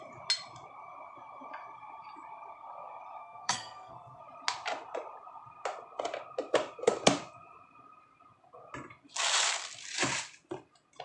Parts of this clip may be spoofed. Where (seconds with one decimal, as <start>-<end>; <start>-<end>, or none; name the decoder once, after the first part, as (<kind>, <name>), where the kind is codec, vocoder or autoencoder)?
3.2-4.2 (codec, SNAC)